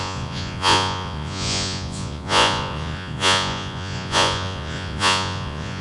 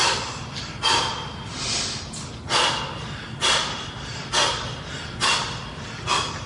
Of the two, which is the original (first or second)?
second